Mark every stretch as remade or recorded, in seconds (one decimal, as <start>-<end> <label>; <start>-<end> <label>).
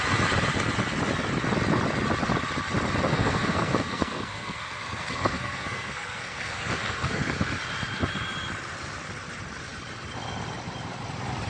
0.0-3.1 recorded; 3.1-7.4 remade; 7.4-11.5 recorded